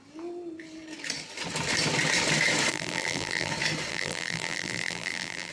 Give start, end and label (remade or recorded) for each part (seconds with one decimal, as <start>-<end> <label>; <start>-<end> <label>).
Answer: 0.0-2.7 recorded; 2.7-3.5 remade; 3.5-3.9 recorded; 3.9-5.5 remade